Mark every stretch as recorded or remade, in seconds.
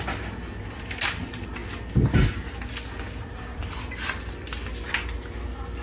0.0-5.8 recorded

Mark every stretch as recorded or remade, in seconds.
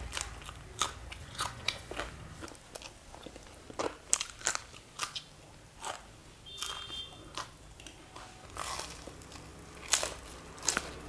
0.0-1.0 recorded; 1.0-1.9 remade; 1.9-11.1 recorded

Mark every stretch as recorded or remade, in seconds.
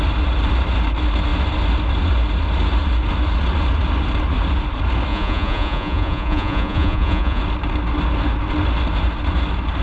0.0-5.1 recorded; 5.1-7.4 remade; 7.4-9.8 recorded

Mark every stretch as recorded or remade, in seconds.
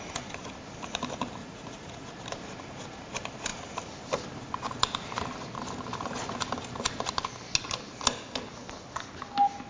0.0-1.4 recorded; 1.4-2.1 remade; 2.1-9.7 recorded